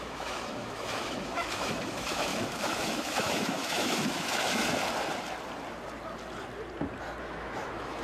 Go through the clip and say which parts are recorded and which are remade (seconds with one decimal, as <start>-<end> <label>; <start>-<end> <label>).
0.0-4.6 remade; 4.6-7.2 recorded; 7.2-8.0 remade